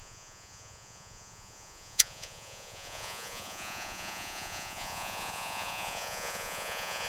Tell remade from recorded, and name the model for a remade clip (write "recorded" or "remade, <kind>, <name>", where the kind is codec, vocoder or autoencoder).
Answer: remade, vocoder, Vocos